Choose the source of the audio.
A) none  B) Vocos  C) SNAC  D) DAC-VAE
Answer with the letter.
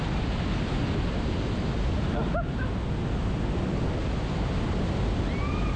A